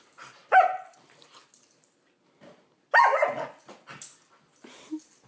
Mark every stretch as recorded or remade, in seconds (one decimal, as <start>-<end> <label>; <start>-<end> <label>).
0.0-5.3 recorded